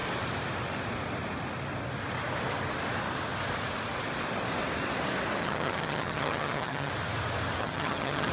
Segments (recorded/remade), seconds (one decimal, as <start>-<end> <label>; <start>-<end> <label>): 0.0-5.4 recorded; 5.4-6.9 remade; 6.9-7.6 recorded; 7.6-8.3 remade